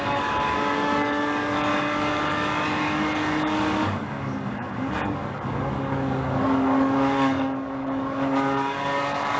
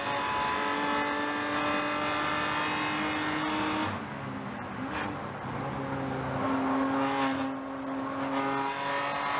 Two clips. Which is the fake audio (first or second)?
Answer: first